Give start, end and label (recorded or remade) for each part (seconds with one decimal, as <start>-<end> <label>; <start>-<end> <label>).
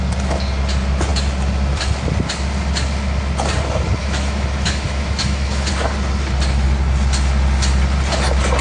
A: 0.0-4.0 recorded; 4.0-5.7 remade; 5.7-8.6 recorded